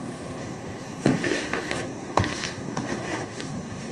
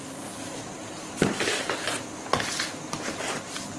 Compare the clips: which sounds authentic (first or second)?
second